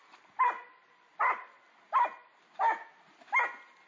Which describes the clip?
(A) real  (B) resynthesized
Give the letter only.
A